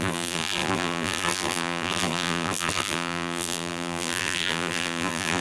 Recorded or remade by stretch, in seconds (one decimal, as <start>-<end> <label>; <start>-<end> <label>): 0.0-5.4 remade